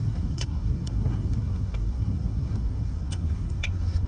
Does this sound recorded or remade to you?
remade